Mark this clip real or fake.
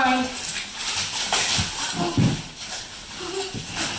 real